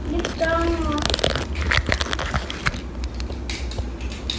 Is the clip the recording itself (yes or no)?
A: yes